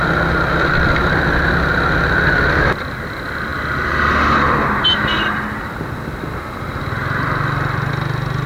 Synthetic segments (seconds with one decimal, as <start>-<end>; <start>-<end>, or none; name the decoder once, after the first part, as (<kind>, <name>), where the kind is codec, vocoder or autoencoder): none